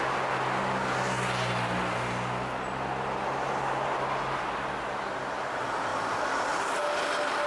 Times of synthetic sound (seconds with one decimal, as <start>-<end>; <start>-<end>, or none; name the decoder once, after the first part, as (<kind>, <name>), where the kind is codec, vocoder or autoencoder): none